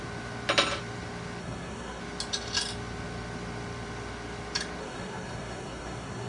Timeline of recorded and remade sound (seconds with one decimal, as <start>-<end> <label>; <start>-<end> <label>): 0.0-1.4 recorded; 1.4-2.0 remade; 2.0-4.8 recorded; 4.8-6.3 remade